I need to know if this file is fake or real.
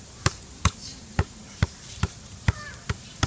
fake